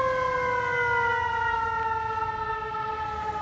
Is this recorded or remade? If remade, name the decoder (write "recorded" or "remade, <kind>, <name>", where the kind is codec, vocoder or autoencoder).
recorded